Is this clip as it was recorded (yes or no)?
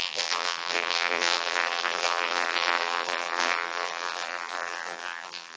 no